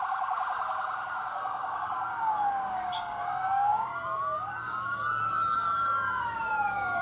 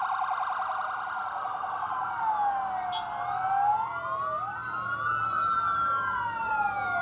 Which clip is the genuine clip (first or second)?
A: second